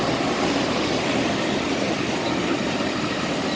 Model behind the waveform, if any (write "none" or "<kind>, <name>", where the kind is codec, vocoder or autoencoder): none